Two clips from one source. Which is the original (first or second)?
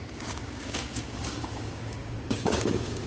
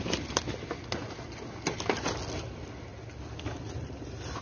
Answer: second